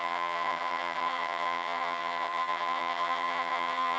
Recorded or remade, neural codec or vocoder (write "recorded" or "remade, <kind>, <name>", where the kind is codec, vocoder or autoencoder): remade, vocoder, HiFi-GAN